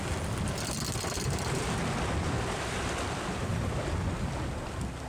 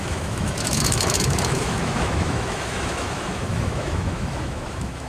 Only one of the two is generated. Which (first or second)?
second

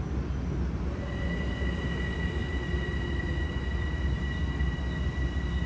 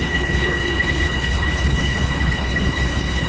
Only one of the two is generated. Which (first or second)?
second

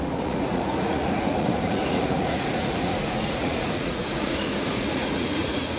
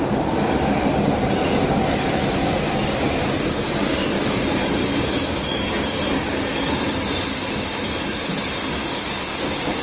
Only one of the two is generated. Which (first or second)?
first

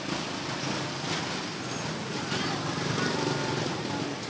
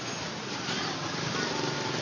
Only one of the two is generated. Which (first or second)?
second